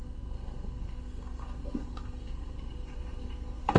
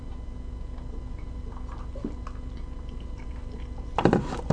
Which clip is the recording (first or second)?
second